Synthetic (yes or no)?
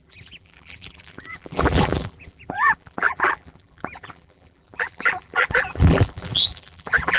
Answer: yes